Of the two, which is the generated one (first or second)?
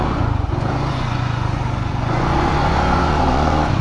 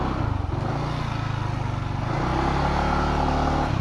first